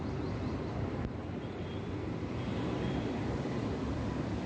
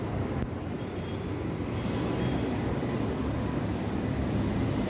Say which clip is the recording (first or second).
second